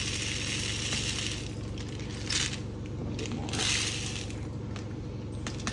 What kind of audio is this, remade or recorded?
recorded